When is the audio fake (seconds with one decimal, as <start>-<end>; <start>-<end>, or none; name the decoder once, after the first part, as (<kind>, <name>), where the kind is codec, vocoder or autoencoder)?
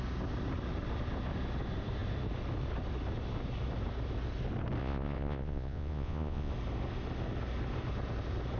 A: 4.8-6.5 (vocoder, Vocos)